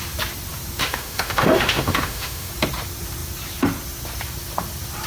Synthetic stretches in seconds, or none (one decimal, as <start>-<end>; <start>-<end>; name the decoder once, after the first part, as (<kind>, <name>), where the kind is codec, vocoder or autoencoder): 0.8-2.5 (autoencoder, DAC-VAE)